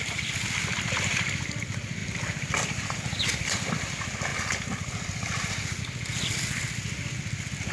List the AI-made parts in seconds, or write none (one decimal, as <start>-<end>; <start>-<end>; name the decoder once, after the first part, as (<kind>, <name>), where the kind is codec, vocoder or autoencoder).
2.0-3.9 (vocoder, BigVGAN v2); 4.3-5.8